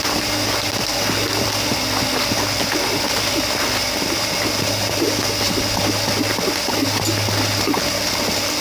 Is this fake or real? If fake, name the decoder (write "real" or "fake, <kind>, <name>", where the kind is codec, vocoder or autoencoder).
real